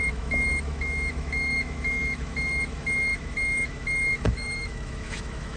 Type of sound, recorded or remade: remade